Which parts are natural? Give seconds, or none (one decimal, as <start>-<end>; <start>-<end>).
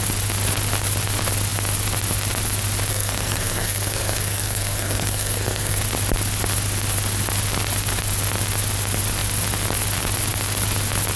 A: 0.0-2.9; 5.8-11.2